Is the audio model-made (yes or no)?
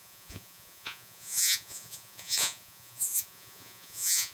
yes